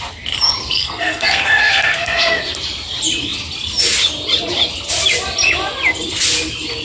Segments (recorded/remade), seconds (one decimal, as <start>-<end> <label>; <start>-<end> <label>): 0.0-0.6 recorded; 0.6-2.4 remade; 2.4-6.8 recorded